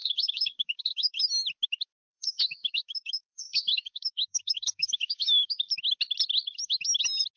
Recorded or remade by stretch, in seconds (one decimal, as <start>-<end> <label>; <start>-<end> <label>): 0.0-1.2 remade; 1.2-2.0 recorded; 2.0-5.7 remade; 5.7-7.4 recorded